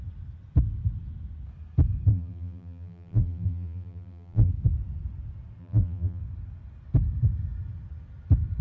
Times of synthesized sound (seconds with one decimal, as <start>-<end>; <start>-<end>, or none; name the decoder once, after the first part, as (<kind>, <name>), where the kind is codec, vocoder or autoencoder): 2.1-4.5 (vocoder, BigVGAN v2); 5.6-6.2